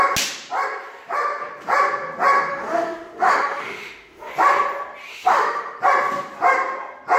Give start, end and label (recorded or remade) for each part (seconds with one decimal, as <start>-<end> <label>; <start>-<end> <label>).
0.0-2.5 recorded; 2.5-4.3 remade; 4.3-5.1 recorded; 5.1-5.8 remade; 5.8-7.2 recorded